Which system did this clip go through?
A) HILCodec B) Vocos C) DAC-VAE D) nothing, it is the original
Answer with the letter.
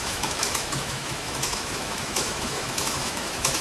C